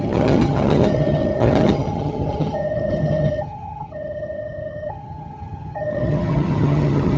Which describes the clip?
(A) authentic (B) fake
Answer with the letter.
B